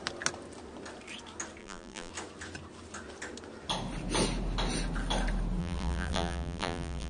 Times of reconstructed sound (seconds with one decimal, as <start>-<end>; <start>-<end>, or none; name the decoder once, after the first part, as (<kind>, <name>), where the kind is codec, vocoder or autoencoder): 1.6-2.1 (vocoder, BigVGAN v2); 5.6-7.1